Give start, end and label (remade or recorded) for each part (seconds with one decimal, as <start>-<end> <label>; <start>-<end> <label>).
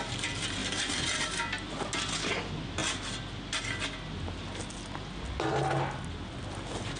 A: 0.0-7.0 recorded